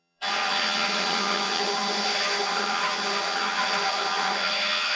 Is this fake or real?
fake